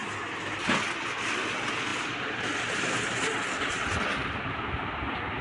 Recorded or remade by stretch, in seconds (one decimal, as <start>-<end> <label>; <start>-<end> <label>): 0.0-5.4 recorded

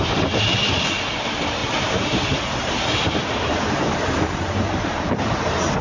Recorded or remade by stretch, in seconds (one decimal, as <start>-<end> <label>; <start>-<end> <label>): 0.0-1.6 recorded; 1.6-5.0 remade; 5.0-5.8 recorded